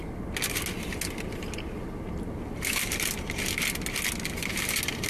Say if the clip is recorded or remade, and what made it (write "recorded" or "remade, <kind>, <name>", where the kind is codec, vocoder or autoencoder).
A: recorded